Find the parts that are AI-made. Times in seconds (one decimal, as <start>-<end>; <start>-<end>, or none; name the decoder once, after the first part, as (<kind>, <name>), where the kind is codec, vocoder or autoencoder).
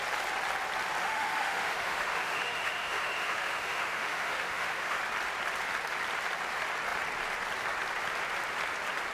1.0-5.0 (autoencoder, DAC-VAE)